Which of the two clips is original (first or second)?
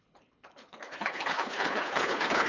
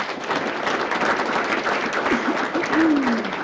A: second